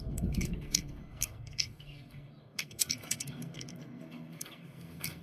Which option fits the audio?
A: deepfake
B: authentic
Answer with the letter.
A